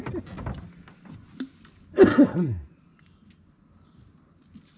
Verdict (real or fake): real